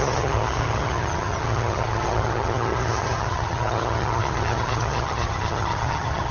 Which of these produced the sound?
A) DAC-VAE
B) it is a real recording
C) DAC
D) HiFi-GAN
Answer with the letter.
D